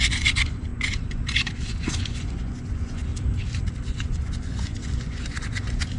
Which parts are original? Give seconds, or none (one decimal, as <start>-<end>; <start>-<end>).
3.1-3.9